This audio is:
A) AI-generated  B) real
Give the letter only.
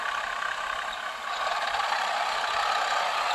B